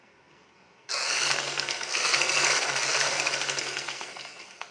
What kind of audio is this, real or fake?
fake